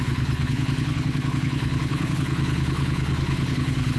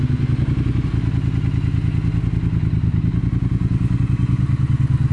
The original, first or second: second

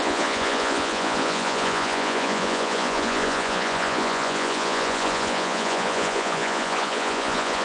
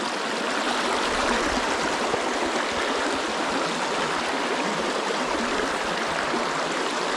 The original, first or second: second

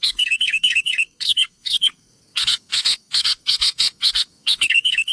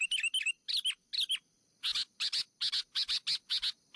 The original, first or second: second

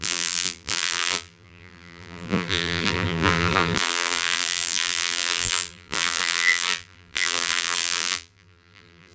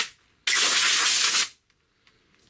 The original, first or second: second